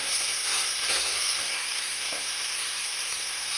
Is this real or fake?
fake